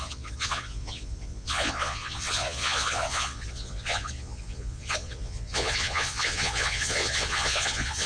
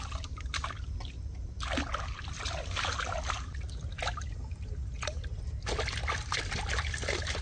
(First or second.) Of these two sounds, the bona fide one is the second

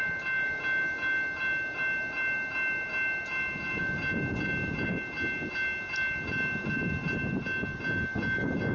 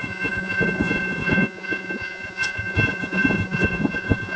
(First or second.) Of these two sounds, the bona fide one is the first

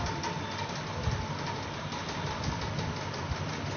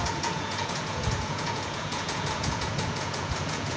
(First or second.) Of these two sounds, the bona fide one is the first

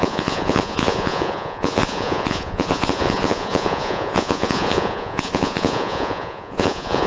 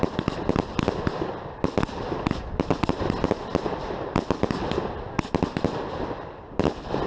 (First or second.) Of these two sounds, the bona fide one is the second